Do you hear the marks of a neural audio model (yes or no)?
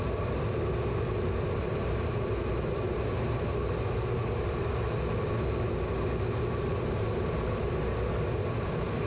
no